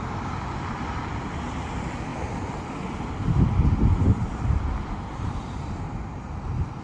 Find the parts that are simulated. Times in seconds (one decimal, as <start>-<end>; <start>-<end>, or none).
none